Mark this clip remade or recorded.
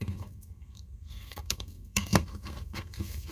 remade